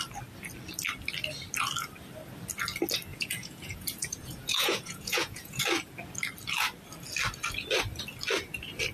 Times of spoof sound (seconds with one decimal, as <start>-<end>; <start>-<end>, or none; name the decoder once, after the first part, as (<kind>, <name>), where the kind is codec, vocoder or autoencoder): 3.1-5.6 (vocoder, Vocos)